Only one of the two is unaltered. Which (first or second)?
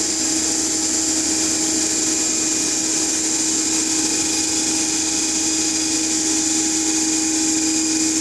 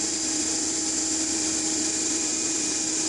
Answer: first